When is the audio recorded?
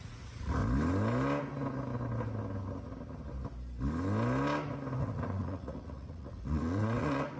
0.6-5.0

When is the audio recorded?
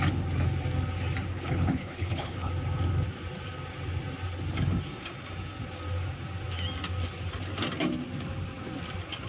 0.0-1.3; 2.5-9.3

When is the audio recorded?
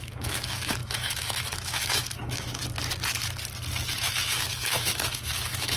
2.6-4.0